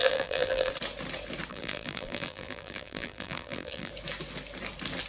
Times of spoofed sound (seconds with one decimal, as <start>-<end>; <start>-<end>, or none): 0.0-0.7; 1.5-3.9